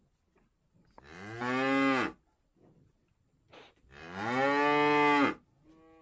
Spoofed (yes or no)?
no